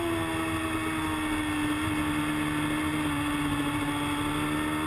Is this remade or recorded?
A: recorded